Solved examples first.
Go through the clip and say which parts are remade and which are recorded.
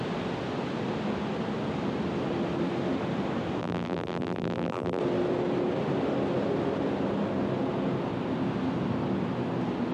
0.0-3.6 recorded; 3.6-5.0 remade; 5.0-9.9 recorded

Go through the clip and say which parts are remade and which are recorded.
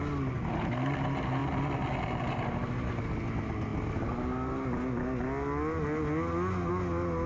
0.0-7.3 recorded